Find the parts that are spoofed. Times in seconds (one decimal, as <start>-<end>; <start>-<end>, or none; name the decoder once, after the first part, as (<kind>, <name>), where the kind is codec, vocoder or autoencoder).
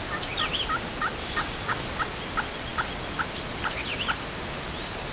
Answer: 1.2-2.0 (codec, DAC)